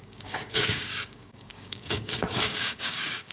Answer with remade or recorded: remade